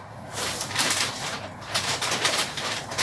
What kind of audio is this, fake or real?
fake